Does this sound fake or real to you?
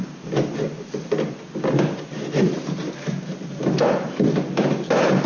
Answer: real